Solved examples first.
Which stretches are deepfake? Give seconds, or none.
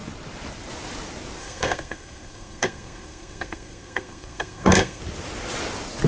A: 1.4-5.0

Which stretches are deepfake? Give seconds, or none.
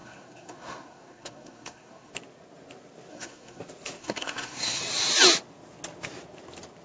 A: 0.0-2.1; 3.1-3.6; 4.0-4.8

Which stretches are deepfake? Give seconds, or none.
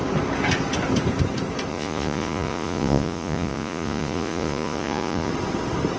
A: 1.7-5.3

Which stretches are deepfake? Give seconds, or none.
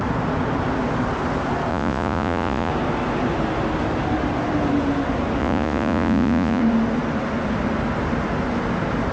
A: 1.7-2.7; 5.4-6.6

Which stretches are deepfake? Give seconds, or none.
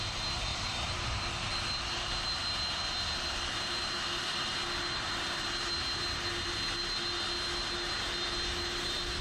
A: 0.5-1.5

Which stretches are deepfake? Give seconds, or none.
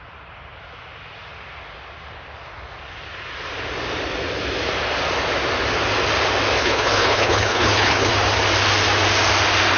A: 6.6-8.1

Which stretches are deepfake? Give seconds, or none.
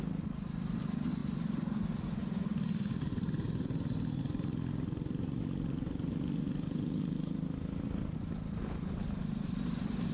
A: none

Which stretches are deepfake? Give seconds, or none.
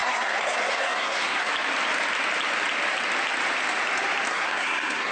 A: 0.0-1.5; 4.3-5.1